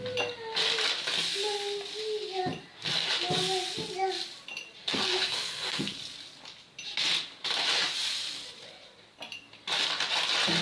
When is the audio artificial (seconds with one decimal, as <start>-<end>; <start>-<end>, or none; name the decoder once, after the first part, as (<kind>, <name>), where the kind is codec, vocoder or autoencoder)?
4.8-6.0 (codec, SNAC)